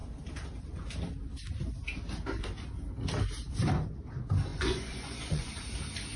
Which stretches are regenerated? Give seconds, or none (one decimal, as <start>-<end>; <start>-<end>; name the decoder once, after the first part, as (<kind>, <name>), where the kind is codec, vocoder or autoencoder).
4.5-5.5 (vocoder, Vocos)